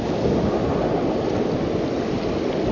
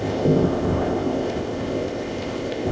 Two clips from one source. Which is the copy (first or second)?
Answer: second